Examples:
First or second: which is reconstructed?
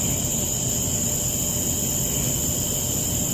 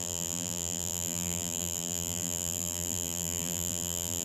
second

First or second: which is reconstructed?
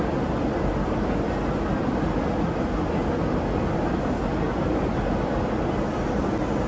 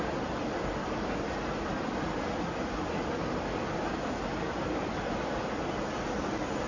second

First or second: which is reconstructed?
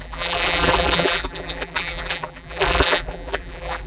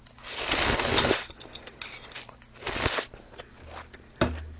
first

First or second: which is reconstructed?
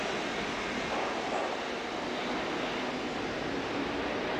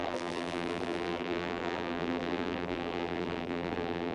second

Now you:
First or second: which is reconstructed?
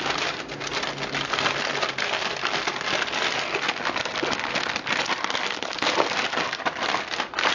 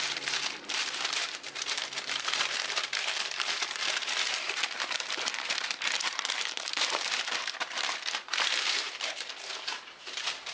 second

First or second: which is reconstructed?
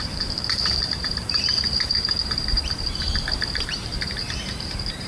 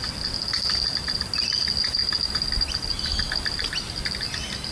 first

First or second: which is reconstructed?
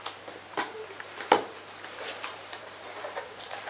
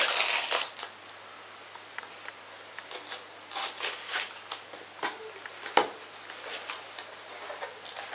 first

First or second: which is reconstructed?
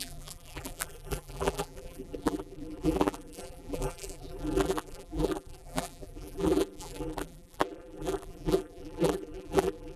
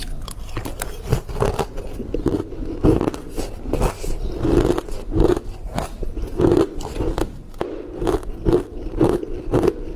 first